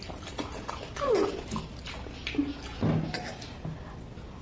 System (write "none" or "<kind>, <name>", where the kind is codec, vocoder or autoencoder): none